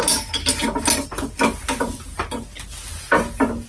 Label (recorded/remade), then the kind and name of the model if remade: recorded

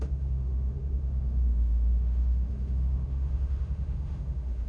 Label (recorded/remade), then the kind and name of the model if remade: remade, autoencoder, DAC-VAE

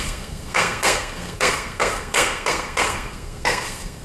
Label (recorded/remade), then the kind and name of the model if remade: remade, codec, SNAC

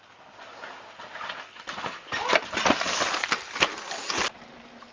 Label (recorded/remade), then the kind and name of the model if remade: recorded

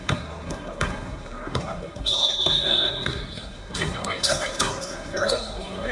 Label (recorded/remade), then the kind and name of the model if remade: remade, codec, SNAC